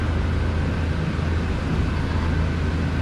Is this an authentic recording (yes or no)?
yes